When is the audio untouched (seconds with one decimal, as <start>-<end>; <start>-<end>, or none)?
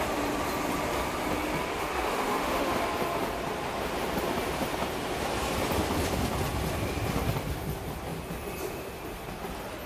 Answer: 0.0-1.7; 2.7-9.9